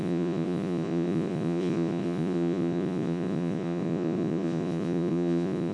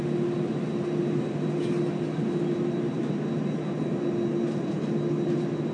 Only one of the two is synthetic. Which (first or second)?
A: first